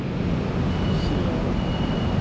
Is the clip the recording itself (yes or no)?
yes